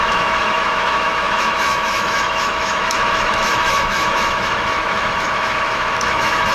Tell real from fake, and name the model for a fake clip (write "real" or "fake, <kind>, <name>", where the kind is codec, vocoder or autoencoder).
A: fake, autoencoder, DAC-VAE